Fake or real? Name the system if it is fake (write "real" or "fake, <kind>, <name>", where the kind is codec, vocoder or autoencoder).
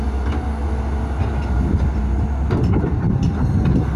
real